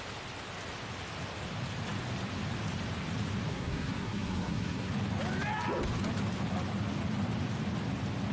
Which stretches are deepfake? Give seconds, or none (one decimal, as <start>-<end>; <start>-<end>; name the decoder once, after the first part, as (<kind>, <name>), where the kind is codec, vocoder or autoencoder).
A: 3.5-4.9 (codec, SNAC)